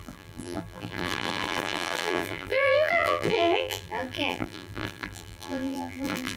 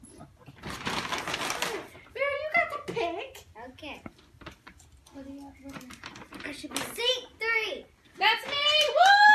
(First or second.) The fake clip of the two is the first